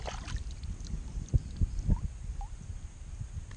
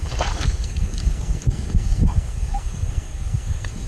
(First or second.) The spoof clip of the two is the second